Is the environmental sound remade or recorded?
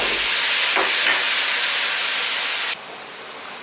recorded